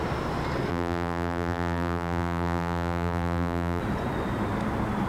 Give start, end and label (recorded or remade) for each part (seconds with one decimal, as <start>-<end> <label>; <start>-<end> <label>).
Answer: 0.0-0.7 recorded; 0.7-3.8 remade; 3.8-5.1 recorded